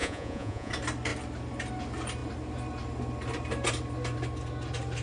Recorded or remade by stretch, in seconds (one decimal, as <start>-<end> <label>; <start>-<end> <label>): 0.0-0.7 remade; 0.7-5.0 recorded